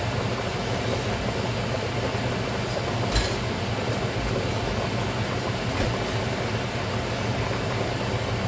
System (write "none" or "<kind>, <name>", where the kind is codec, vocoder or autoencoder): none